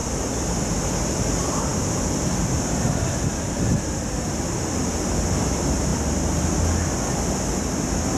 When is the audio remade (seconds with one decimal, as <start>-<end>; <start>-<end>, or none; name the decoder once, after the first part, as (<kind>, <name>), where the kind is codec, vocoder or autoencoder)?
none